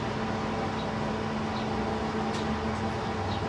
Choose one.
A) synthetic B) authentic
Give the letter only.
B